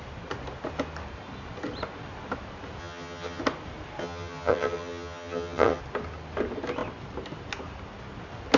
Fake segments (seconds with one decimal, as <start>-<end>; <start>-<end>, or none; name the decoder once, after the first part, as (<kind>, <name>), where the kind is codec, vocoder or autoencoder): 2.8-3.4 (vocoder, HiFi-GAN); 4.0-5.8